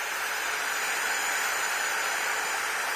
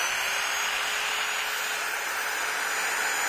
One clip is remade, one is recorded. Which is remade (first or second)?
first